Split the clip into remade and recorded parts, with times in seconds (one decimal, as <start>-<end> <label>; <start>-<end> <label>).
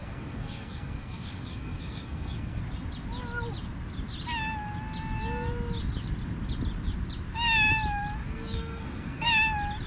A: 0.0-2.6 remade; 2.6-8.2 recorded; 8.2-9.3 remade; 9.3-9.9 recorded